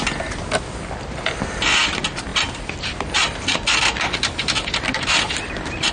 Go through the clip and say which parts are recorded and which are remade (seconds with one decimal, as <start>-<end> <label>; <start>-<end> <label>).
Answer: 0.0-2.3 recorded; 2.3-5.9 remade